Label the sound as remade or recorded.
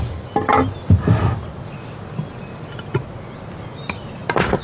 recorded